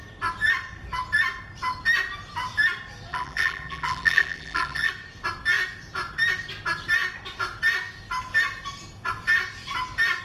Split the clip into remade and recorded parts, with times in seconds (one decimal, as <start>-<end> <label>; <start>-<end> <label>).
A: 0.0-3.1 recorded; 3.1-4.9 remade; 4.9-10.2 recorded